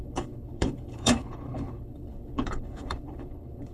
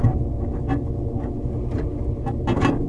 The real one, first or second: second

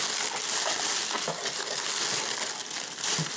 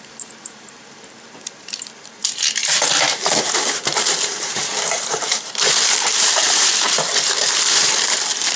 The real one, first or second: first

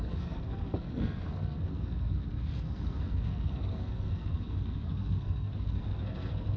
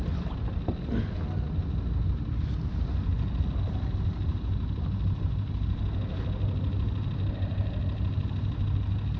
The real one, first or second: second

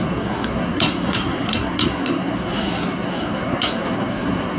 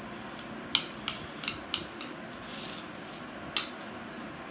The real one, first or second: second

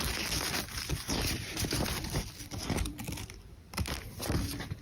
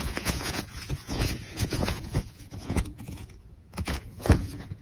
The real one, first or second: first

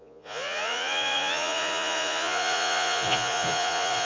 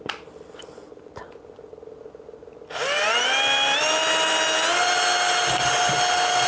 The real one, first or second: second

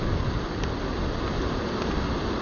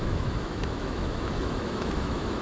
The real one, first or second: first